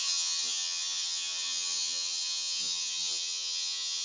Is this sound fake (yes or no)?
yes